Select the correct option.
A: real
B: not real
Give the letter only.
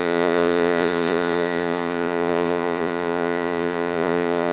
B